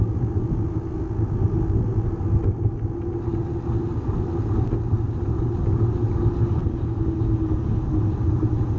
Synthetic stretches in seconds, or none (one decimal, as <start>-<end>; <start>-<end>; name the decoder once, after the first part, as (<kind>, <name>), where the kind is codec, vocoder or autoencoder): none